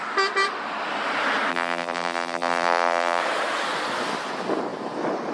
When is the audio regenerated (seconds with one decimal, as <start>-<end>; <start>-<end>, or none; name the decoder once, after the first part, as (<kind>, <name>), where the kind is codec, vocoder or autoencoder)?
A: 1.5-3.2 (vocoder, BigVGAN v2)